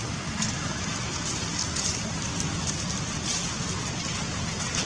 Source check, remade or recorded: recorded